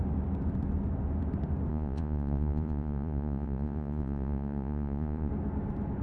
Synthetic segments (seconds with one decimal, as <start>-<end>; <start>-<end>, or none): 1.7-5.3